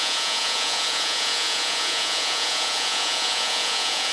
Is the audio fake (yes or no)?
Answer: yes